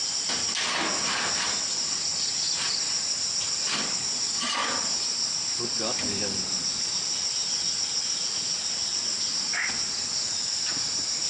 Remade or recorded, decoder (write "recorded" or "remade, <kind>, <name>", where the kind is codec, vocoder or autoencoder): recorded